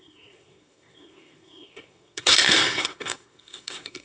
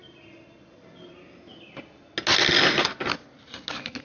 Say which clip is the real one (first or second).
second